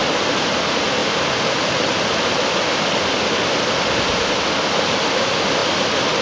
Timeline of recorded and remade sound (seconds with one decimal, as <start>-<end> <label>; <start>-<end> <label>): 0.0-1.0 remade; 1.0-4.7 recorded; 4.7-5.6 remade; 5.6-6.2 recorded